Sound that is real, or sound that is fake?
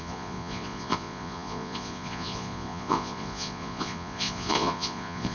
fake